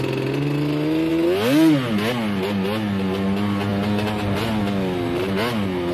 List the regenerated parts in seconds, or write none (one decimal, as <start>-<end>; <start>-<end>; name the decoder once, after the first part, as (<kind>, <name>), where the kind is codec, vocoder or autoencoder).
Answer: none